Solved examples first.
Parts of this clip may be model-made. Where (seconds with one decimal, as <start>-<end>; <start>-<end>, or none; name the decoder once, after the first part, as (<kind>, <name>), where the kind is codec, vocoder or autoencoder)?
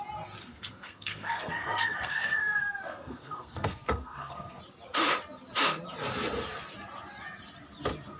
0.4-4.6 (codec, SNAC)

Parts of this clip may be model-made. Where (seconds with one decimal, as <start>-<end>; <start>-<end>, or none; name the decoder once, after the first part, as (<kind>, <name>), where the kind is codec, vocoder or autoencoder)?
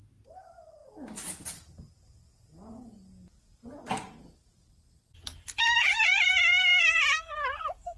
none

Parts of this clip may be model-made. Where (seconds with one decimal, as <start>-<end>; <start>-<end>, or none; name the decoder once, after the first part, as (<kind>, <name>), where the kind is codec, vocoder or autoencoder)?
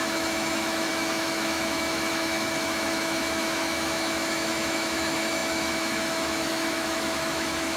0.0-7.8 (autoencoder, DAC-VAE)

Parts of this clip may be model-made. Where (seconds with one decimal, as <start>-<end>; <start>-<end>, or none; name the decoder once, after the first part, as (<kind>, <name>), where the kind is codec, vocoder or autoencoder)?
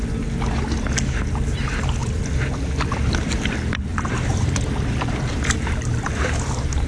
3.9-6.9 (vocoder, BigVGAN v2)